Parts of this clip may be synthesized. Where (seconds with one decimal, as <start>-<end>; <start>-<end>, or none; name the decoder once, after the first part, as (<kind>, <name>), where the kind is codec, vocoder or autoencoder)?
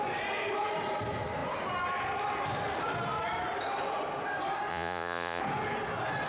4.7-5.4 (vocoder, Vocos)